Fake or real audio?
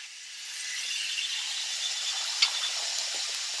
real